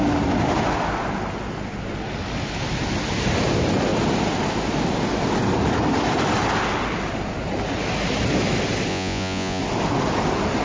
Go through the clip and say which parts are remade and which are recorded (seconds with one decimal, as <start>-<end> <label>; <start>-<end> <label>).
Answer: 0.0-8.9 recorded; 8.9-9.6 remade; 9.6-10.6 recorded